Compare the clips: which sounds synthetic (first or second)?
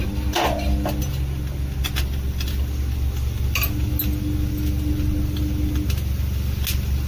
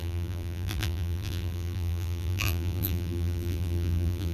second